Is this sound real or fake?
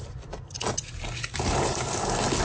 real